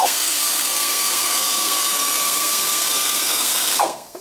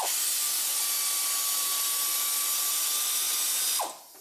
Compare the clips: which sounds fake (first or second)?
first